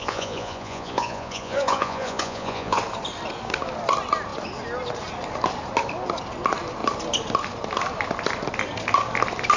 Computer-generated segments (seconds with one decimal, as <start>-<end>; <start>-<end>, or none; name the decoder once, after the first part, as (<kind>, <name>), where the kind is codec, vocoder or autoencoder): 0.0-2.8 (vocoder, Vocos)